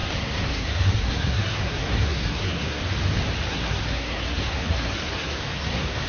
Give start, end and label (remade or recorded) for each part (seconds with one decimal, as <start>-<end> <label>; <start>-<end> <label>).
0.0-2.8 remade; 2.8-3.5 recorded; 3.5-6.1 remade